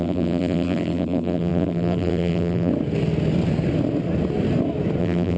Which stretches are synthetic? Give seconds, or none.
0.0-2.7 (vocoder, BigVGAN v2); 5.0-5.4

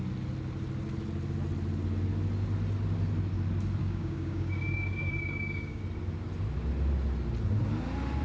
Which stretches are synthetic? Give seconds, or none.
3.8-5.8 (codec, DAC)

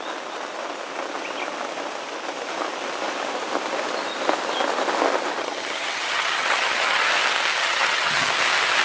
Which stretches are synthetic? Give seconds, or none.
5.4-7.1 (vocoder, HiFi-GAN); 7.6-8.3